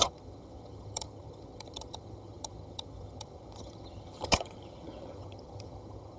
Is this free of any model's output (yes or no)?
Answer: no